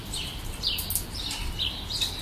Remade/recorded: recorded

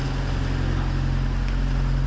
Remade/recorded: recorded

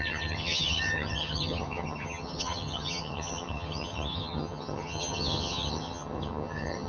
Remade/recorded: remade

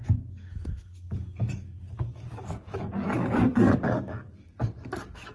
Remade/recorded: remade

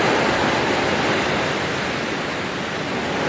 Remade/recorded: recorded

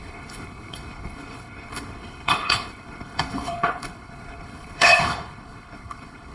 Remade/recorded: remade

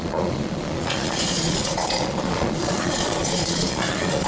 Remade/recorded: remade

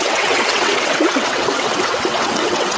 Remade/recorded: remade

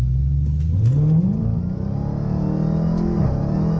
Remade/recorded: recorded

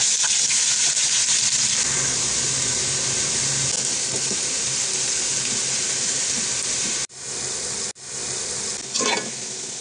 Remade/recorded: recorded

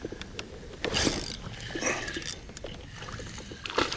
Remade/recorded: recorded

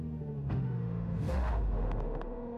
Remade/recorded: remade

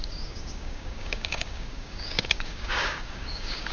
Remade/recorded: remade